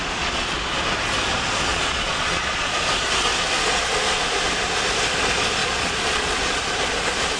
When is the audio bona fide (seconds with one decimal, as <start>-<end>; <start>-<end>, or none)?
0.6-1.7; 2.9-5.6; 6.6-7.4